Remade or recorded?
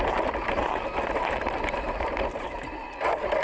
recorded